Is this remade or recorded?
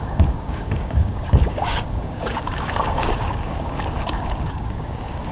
remade